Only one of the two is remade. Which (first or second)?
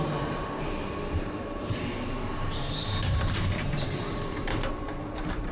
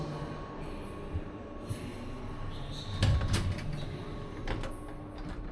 first